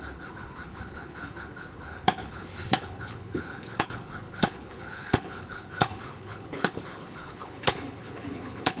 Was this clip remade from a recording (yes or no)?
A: yes